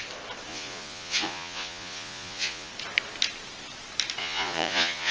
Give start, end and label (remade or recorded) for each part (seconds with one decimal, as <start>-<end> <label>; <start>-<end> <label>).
0.0-0.5 recorded; 0.5-2.7 remade; 2.7-4.2 recorded; 4.2-5.1 remade